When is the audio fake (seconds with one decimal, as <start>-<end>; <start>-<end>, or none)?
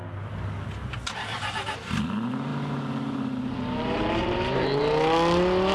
2.5-4.8